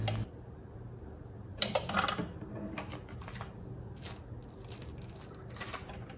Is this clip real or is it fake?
real